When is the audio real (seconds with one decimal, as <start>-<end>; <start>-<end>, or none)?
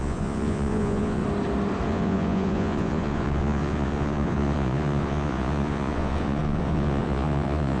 1.2-1.9